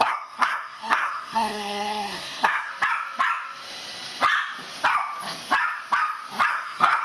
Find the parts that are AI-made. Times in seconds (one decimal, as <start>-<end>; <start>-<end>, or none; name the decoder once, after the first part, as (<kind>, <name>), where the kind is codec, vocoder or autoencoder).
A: 0.0-2.7 (codec, SNAC); 6.5-7.0